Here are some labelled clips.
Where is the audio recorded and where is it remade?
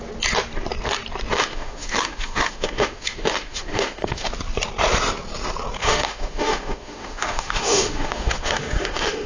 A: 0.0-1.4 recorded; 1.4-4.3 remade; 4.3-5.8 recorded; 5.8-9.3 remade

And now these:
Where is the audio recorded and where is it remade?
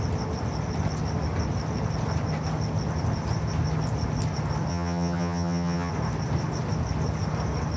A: 0.0-4.7 recorded; 4.7-5.9 remade; 5.9-7.8 recorded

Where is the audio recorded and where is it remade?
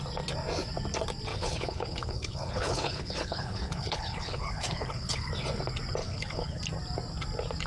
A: 0.0-1.3 recorded; 1.3-5.3 remade; 5.3-6.0 recorded; 6.0-6.6 remade; 6.6-7.7 recorded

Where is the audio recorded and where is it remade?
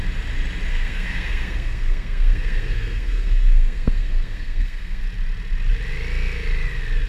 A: 0.0-0.7 recorded; 0.7-5.0 remade; 5.0-7.1 recorded